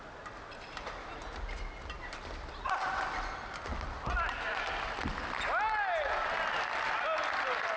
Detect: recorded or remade recorded